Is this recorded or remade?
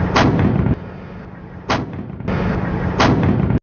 recorded